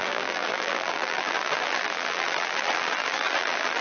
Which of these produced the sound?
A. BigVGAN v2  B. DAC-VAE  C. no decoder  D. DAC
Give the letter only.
A